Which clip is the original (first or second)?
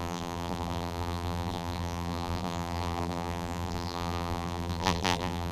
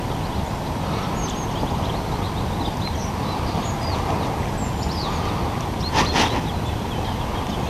second